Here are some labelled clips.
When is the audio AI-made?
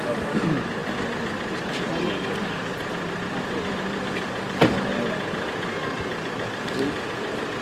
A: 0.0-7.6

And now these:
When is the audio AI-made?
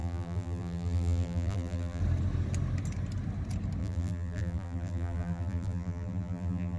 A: 0.0-2.0; 3.8-6.8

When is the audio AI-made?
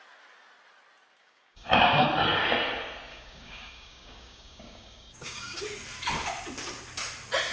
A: 1.2-2.0; 3.1-5.6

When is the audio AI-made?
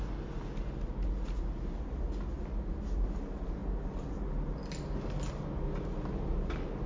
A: none